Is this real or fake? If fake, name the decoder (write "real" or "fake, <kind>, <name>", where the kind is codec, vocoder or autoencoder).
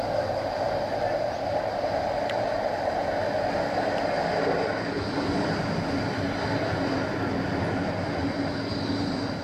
real